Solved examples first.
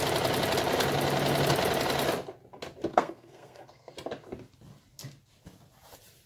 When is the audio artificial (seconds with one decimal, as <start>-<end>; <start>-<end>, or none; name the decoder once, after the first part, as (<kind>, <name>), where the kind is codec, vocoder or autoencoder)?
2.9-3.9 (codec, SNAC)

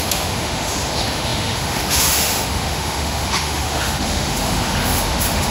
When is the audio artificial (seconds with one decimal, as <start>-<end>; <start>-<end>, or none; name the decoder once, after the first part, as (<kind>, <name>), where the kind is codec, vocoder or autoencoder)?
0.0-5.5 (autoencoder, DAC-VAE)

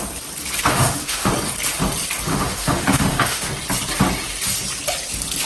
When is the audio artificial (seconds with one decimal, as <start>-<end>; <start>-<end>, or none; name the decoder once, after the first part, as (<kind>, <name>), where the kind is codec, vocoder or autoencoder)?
0.7-1.3 (autoencoder, DAC-VAE); 2.3-3.5

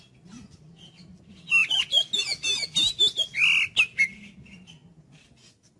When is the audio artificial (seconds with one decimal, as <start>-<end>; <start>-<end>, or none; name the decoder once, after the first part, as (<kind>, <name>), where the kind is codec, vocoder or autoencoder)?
none